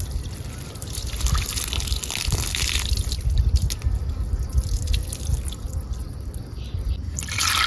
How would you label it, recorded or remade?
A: recorded